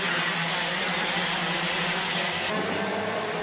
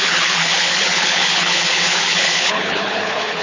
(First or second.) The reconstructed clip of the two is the second